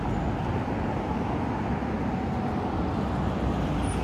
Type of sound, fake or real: real